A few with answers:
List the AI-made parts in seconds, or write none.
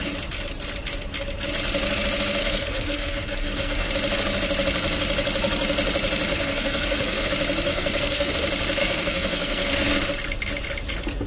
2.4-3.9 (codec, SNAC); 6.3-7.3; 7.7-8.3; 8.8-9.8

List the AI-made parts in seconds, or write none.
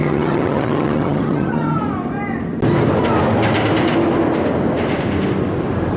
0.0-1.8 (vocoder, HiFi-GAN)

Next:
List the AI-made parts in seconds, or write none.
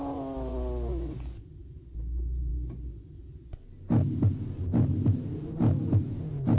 none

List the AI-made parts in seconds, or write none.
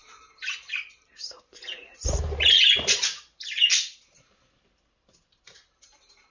none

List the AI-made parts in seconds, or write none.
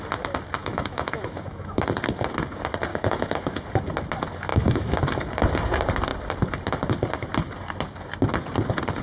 0.6-1.8 (autoencoder, DAC-VAE); 2.9-3.6; 4.5-5.0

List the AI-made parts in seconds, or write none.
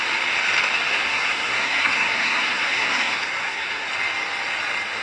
0.9-3.9 (codec, SNAC)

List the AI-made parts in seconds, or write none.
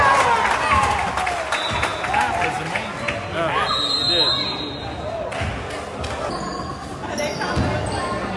none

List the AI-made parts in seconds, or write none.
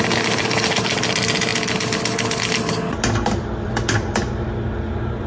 none